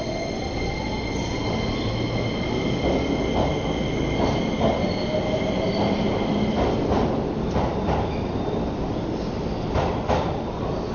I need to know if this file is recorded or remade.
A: recorded